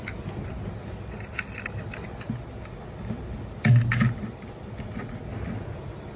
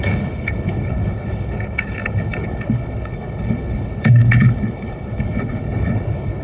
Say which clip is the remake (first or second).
second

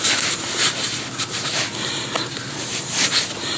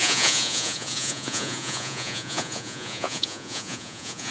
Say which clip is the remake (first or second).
second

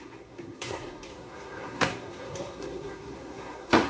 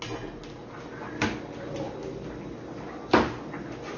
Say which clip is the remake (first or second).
first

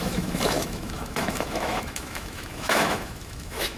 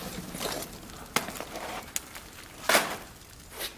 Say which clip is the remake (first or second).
first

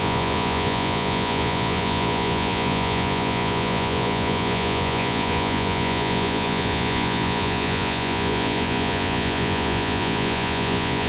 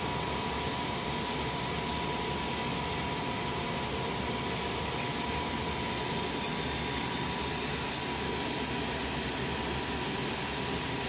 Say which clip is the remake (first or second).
first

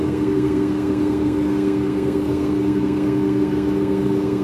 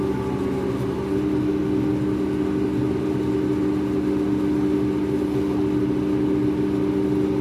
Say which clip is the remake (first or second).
first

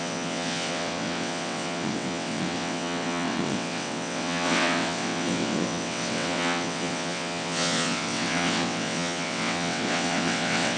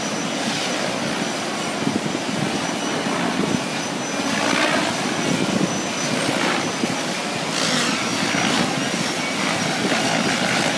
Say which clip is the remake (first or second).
first